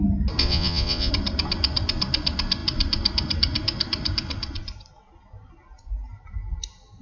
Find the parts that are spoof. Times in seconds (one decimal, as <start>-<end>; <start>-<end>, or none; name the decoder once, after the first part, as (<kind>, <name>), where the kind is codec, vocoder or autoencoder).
0.4-1.1 (vocoder, Vocos)